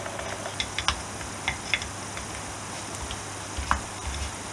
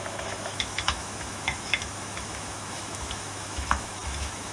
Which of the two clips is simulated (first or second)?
second